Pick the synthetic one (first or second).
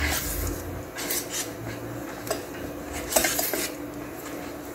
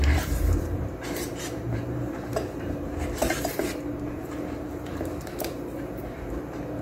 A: second